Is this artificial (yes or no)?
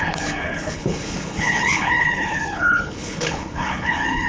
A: yes